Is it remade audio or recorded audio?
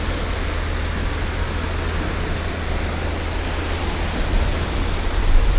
recorded